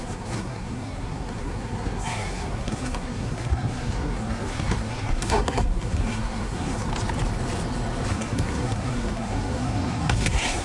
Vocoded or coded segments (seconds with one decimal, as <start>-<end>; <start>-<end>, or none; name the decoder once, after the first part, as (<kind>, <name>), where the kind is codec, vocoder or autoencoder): 0.0-6.9 (codec, SNAC); 8.1-10.6